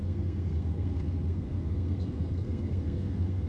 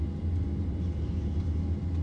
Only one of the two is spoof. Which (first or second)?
first